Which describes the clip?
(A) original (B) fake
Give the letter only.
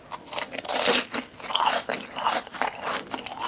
A